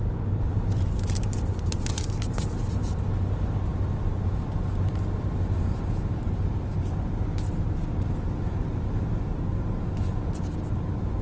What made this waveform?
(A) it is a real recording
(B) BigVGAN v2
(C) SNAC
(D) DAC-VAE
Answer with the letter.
A